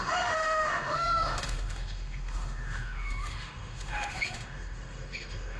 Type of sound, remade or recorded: remade